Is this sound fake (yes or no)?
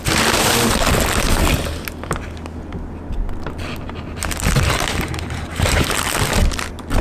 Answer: no